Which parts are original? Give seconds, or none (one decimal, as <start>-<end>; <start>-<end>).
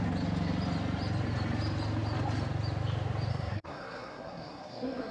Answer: 0.0-3.3